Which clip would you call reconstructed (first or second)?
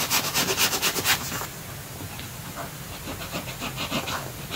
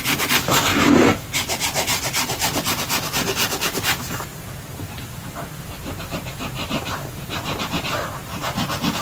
second